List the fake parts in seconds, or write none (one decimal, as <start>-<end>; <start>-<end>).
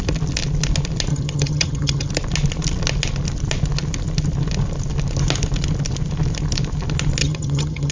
1.1-2.1; 7.2-7.9